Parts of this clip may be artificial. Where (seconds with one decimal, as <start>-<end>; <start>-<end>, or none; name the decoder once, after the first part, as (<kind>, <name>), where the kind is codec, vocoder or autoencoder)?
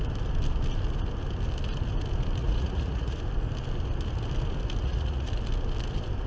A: 2.4-3.2 (vocoder, Vocos); 4.8-5.3